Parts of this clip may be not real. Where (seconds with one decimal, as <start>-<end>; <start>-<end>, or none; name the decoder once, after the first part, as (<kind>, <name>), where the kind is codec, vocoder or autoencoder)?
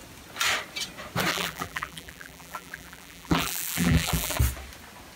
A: 1.3-4.4 (vocoder, BigVGAN v2)